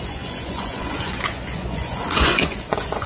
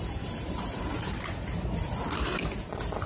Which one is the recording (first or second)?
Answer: second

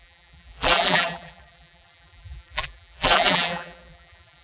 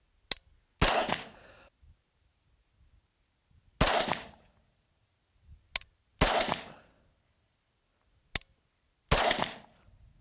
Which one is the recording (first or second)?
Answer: second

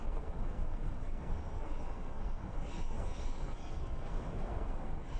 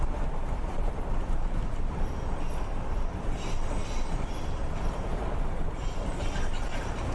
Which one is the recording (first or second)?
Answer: second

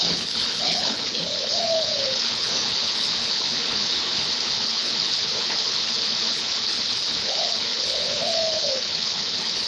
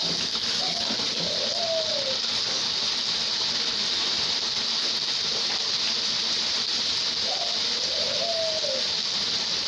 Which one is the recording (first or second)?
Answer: second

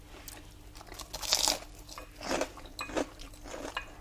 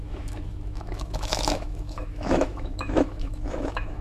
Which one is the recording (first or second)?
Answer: first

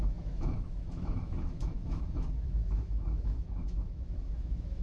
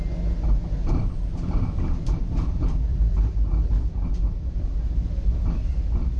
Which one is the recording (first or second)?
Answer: second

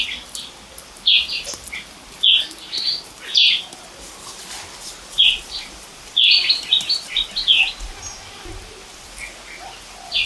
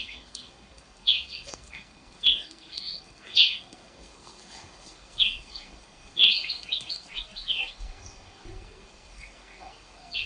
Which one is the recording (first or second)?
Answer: first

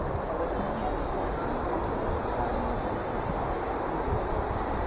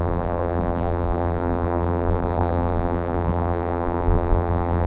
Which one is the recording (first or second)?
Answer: first